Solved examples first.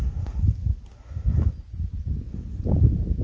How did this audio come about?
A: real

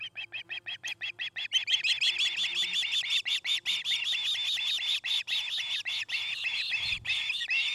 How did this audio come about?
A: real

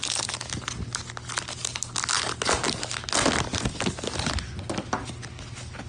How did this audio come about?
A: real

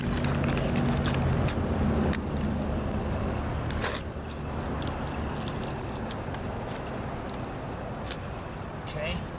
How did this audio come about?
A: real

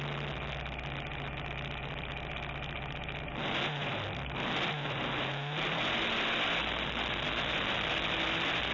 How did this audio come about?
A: real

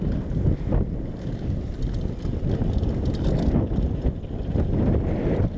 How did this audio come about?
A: real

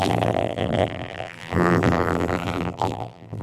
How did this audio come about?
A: fake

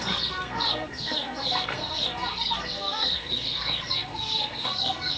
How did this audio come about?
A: fake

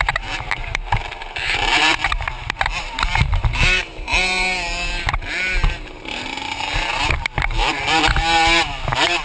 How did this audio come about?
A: fake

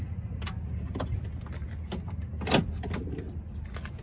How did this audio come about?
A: real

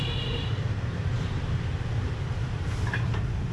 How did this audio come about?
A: fake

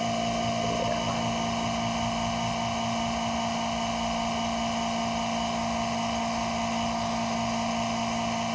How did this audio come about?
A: real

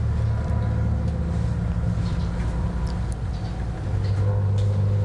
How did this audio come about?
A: real